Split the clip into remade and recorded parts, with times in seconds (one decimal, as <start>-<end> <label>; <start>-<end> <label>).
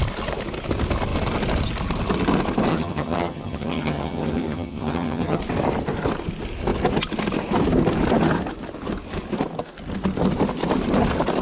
0.0-2.7 recorded; 2.7-5.4 remade; 5.4-11.4 recorded